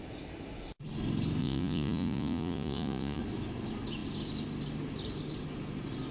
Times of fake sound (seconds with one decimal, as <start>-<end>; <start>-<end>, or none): 1.4-3.2